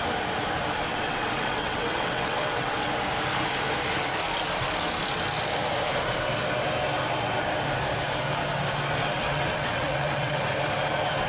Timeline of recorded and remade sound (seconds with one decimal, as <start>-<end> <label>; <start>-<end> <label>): 0.0-0.9 recorded; 0.9-2.9 remade; 2.9-9.0 recorded; 9.0-10.4 remade; 10.4-11.3 recorded